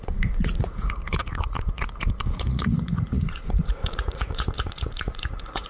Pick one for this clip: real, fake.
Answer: fake